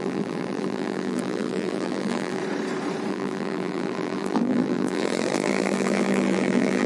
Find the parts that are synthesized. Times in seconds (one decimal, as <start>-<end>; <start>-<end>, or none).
0.0-2.4; 3.1-6.9